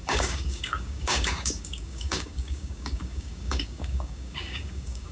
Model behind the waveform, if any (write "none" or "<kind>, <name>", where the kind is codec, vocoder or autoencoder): codec, DAC